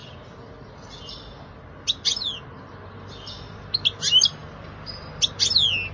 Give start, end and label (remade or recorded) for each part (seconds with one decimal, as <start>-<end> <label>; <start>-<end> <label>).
0.0-5.9 recorded